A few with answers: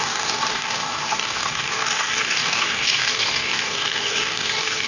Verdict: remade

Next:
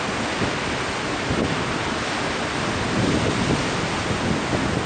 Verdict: recorded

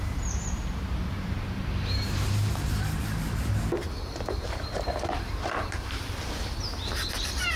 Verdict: remade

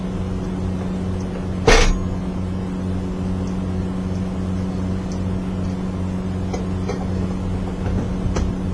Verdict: recorded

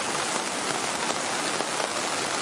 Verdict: recorded